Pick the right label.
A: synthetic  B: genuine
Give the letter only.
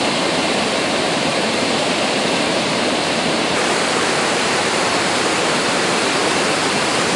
A